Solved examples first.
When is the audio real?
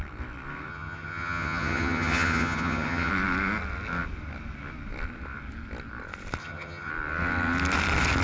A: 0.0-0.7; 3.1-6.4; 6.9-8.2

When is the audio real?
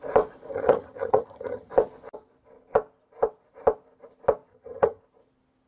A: 0.0-0.5; 1.7-4.5; 5.0-5.7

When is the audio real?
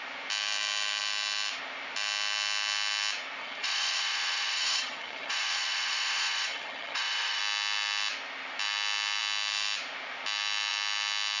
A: 0.0-3.4; 7.4-11.4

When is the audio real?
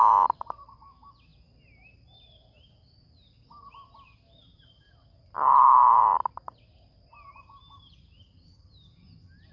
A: 0.0-9.5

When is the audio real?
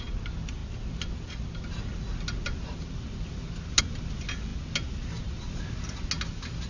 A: 0.0-6.7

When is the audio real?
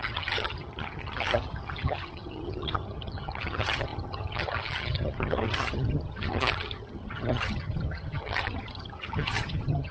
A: none